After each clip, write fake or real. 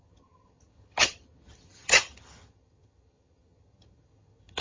fake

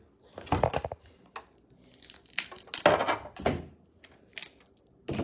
real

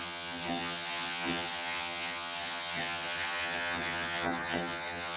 fake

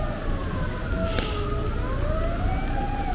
real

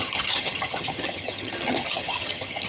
fake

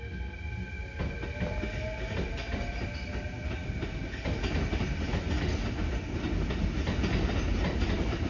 real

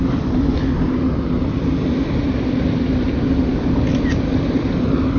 real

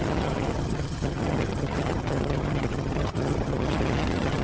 fake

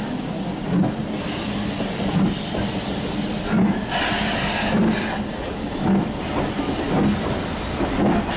real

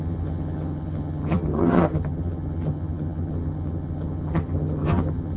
fake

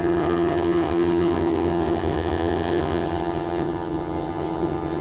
fake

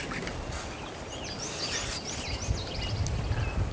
real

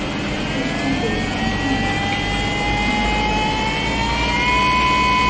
real